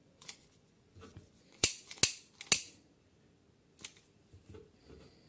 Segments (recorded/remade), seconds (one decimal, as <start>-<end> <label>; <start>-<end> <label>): 0.0-2.0 remade; 2.0-5.3 recorded